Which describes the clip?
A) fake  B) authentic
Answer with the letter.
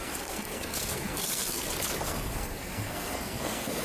A